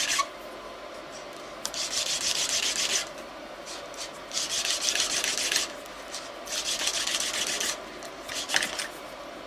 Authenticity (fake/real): real